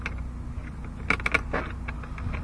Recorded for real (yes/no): yes